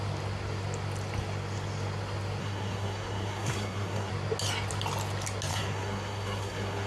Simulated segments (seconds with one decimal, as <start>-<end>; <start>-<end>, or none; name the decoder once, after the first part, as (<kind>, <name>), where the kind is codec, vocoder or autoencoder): 2.4-4.1 (codec, SNAC); 5.5-6.9